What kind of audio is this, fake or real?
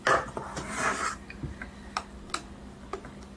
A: real